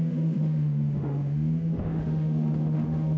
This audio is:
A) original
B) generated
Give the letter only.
B